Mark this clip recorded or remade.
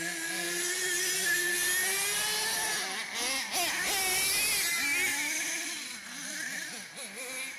recorded